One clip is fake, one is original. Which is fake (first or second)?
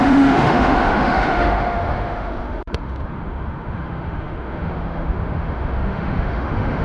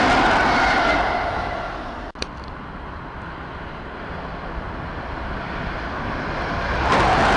first